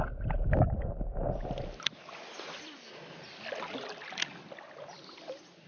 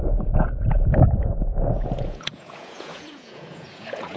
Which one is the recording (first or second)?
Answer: first